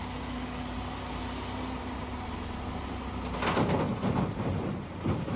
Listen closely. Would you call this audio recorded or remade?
recorded